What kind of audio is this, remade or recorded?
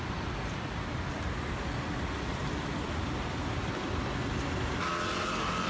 recorded